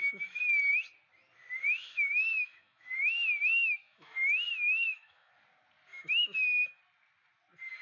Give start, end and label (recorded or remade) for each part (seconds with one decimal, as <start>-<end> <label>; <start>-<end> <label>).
0.0-0.7 remade; 0.7-1.8 recorded; 1.8-2.9 remade; 2.9-3.5 recorded; 3.5-5.3 remade; 5.3-5.9 recorded; 5.9-6.8 remade; 6.8-7.8 recorded